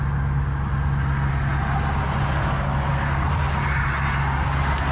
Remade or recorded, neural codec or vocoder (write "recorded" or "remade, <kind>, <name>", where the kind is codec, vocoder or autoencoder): recorded